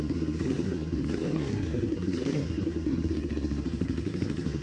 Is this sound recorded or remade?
remade